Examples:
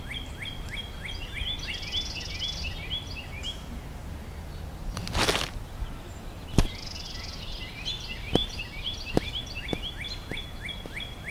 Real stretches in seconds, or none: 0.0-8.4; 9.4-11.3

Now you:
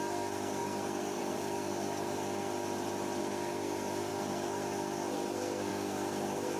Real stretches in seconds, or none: 2.5-3.2

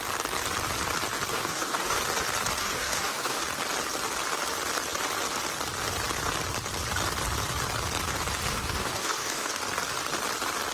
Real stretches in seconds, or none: 0.0-1.3; 2.0-2.6; 3.4-8.5; 9.6-10.7

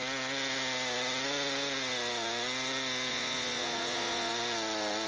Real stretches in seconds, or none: 0.0-3.1; 4.3-5.1

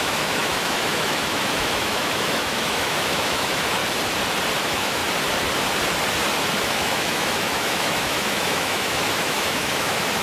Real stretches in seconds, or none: 3.8-4.6; 5.0-6.6

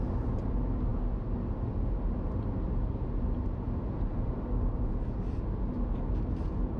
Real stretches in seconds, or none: 0.0-6.8

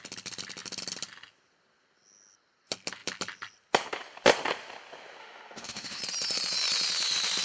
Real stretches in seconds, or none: 0.0-5.2; 6.0-7.4